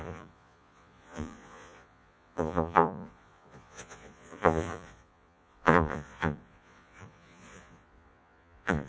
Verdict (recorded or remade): remade